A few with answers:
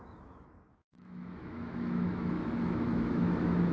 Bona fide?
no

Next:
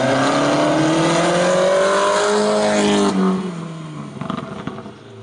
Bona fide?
yes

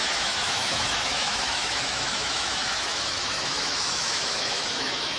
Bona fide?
no